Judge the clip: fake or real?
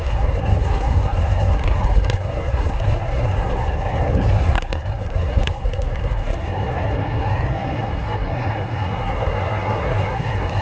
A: fake